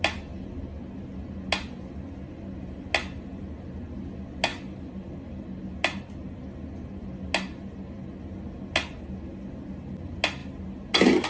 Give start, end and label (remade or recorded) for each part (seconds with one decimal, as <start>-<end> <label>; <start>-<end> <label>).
0.0-11.3 recorded